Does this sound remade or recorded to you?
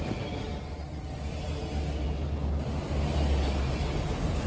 recorded